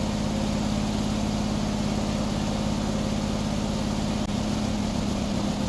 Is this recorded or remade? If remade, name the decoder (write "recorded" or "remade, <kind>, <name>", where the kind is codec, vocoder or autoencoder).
recorded